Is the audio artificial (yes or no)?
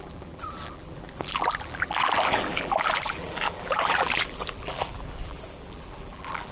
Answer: yes